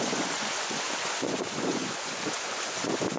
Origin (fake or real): fake